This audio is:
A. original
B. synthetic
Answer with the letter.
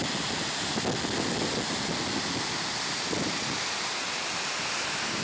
A